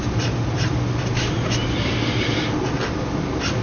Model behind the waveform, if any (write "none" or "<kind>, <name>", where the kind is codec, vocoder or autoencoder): none